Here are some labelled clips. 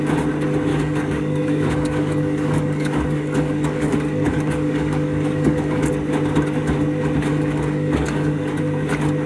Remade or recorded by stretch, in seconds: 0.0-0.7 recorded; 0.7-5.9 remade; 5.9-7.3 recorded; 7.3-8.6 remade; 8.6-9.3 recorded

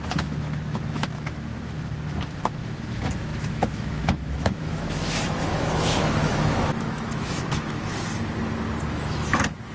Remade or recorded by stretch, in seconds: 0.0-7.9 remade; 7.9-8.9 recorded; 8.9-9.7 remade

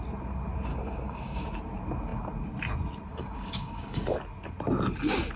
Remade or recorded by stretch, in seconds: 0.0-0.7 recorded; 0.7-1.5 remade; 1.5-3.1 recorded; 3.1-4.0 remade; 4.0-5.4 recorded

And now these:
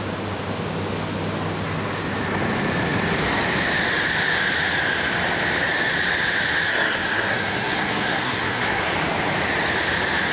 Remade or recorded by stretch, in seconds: 0.0-6.7 recorded; 6.7-8.8 remade; 8.8-10.3 recorded

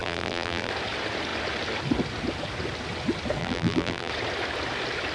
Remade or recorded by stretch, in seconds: 0.0-0.7 remade; 0.7-3.4 recorded; 3.4-4.1 remade; 4.1-5.1 recorded

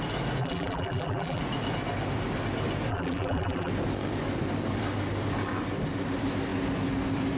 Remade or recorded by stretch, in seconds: 0.0-0.4 recorded; 0.4-1.4 remade; 1.4-2.9 recorded; 2.9-3.7 remade; 3.7-7.4 recorded

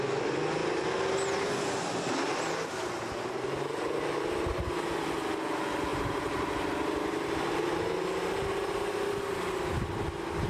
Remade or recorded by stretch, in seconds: 0.0-2.8 recorded; 2.8-4.7 remade; 4.7-5.9 recorded; 5.9-7.7 remade; 7.7-10.5 recorded